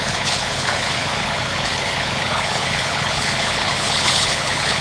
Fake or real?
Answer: fake